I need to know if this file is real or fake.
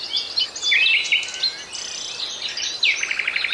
real